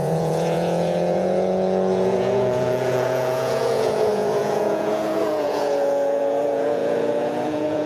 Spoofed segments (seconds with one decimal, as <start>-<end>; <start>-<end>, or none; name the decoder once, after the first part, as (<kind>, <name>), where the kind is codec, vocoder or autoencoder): 0.0-7.9 (vocoder, Vocos)